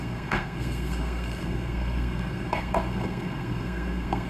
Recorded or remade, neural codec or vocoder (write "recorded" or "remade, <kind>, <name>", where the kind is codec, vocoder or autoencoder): remade, codec, SNAC